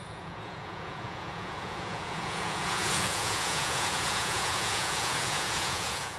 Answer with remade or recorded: remade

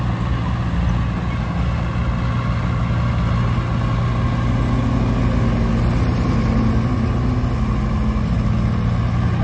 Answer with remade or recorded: recorded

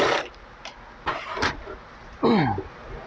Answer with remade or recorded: recorded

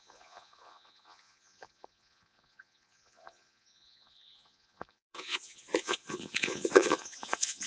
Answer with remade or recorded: remade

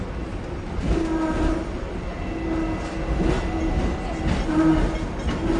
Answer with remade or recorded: recorded